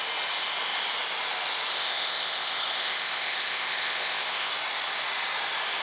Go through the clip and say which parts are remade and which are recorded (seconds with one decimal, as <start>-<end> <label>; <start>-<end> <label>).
0.0-1.7 recorded; 1.7-4.5 remade; 4.5-5.8 recorded